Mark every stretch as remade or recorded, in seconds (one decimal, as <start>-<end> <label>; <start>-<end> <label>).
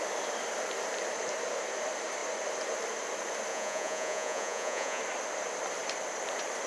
0.0-3.5 recorded; 3.5-5.0 remade; 5.0-6.7 recorded